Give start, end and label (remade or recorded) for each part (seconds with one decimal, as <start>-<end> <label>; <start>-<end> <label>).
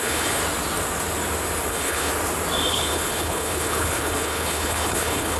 0.0-0.4 remade; 0.4-1.7 recorded; 1.7-2.1 remade; 2.1-2.7 recorded; 2.7-5.4 remade